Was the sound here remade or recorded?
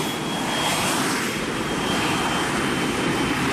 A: recorded